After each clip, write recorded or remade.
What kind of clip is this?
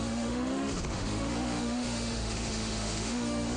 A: remade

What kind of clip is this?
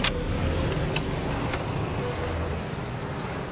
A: recorded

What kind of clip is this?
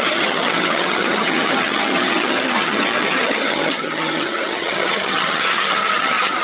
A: remade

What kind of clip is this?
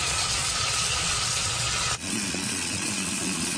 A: remade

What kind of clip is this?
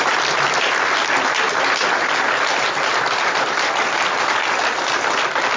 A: recorded